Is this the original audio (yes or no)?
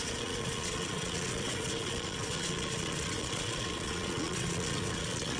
no